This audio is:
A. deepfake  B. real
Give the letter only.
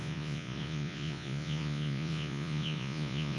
A